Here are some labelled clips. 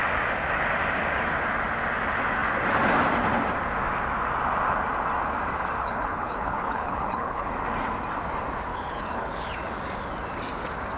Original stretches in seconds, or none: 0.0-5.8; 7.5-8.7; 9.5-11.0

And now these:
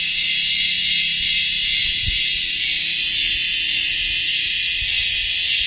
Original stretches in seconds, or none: 0.0-5.7

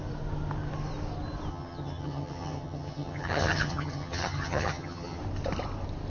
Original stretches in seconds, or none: 0.0-1.5; 5.2-6.1

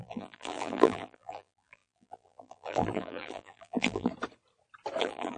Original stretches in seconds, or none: 4.1-5.0

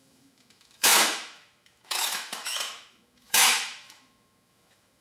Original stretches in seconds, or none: none